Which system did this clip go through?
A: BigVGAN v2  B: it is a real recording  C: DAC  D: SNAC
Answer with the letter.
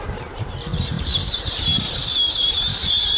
A